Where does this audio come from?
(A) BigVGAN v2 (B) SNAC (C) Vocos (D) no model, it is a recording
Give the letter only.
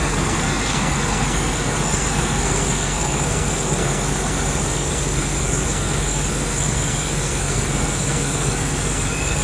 B